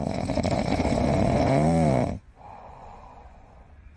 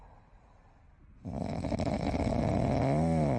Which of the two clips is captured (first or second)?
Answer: second